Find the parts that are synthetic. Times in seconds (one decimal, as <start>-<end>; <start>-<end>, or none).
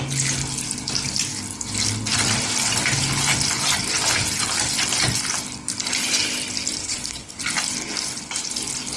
6.8-7.4